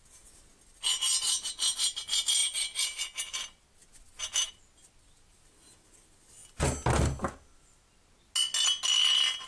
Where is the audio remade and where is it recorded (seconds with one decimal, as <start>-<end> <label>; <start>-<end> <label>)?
0.0-9.5 recorded